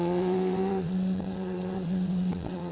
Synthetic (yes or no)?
yes